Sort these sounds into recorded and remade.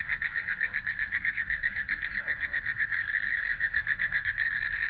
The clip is remade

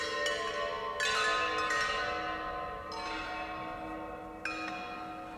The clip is recorded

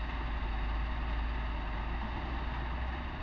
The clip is recorded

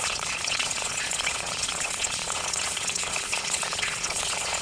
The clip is remade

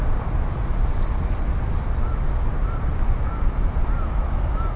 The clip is recorded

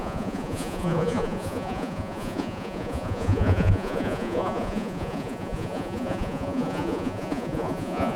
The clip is remade